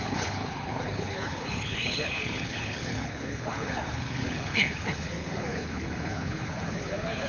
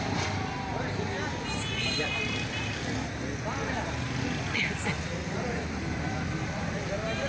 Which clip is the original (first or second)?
second